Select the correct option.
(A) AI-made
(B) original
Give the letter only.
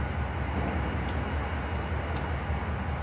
B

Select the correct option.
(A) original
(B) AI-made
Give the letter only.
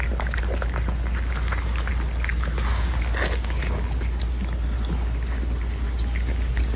A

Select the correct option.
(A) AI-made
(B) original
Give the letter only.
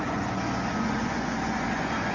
A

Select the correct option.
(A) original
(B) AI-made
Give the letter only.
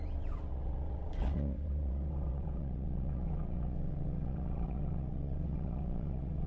B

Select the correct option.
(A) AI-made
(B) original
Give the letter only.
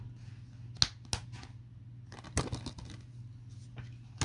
B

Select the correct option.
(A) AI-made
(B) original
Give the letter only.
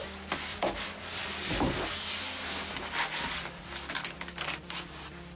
B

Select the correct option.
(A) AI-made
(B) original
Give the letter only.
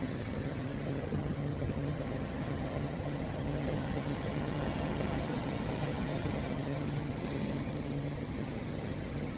A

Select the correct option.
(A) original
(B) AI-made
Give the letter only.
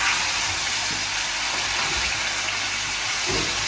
A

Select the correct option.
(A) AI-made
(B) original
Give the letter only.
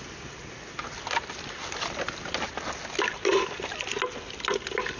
B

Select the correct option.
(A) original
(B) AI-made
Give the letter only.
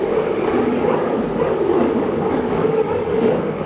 B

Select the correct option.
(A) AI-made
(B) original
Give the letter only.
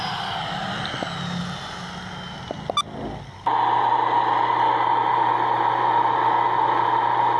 B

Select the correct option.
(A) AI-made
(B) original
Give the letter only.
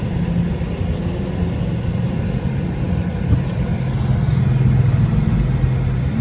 B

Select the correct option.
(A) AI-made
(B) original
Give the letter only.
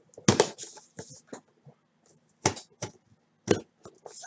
B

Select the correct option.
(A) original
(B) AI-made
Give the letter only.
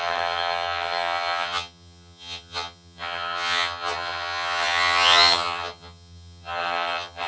B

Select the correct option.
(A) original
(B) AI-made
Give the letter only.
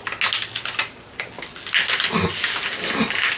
A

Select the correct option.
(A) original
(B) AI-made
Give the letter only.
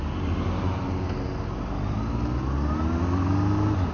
A